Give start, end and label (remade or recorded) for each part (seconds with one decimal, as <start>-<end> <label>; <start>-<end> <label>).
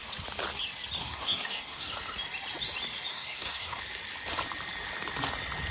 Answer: 0.0-1.0 recorded; 1.0-1.9 remade; 1.9-3.1 recorded; 3.1-3.8 remade; 3.8-5.7 recorded